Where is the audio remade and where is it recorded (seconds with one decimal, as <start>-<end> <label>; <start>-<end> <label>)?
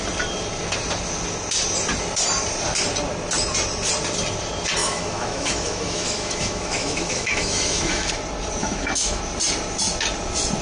0.0-4.8 recorded; 4.8-8.1 remade; 8.1-8.6 recorded; 8.6-9.2 remade; 9.2-10.6 recorded